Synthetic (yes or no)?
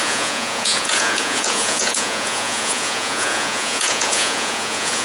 yes